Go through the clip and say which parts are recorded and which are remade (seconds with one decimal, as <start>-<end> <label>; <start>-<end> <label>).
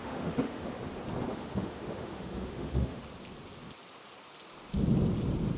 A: 0.0-0.7 remade; 0.7-1.3 recorded; 1.3-3.0 remade; 3.0-5.6 recorded